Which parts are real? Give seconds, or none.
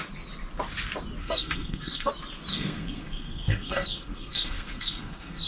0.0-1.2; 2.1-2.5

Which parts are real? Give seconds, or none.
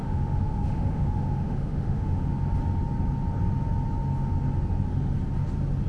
2.3-5.9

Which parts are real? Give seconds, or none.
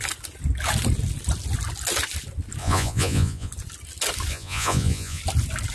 0.0-2.6; 3.5-4.3; 5.2-5.7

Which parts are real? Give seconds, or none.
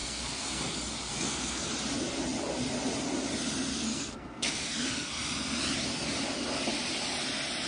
0.6-1.1; 1.7-3.7; 5.1-7.7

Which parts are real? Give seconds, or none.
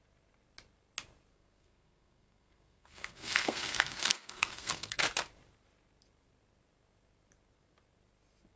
0.0-1.3; 5.0-8.6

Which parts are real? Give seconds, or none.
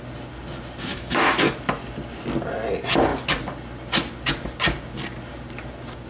0.0-0.9; 1.4-6.1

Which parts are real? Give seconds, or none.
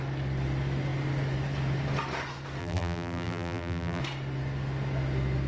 0.0-2.6; 4.0-5.5